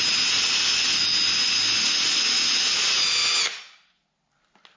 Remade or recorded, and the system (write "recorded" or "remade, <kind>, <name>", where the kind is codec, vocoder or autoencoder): recorded